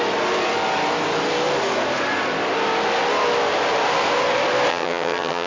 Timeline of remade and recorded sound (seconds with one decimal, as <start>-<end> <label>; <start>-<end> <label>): 0.0-4.7 recorded; 4.7-5.5 remade